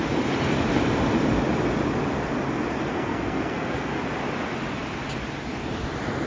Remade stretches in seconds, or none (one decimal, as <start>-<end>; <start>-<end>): 2.9-4.0